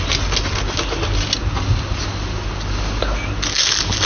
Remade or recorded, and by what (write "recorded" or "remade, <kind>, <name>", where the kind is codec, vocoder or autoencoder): recorded